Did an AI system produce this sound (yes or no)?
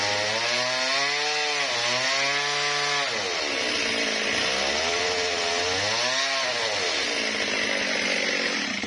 no